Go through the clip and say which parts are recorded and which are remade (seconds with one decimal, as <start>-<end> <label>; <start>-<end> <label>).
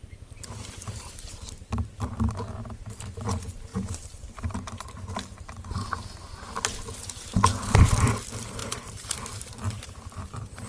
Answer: 0.0-2.8 remade; 2.8-3.7 recorded; 3.7-4.3 remade; 4.3-8.6 recorded; 8.6-10.7 remade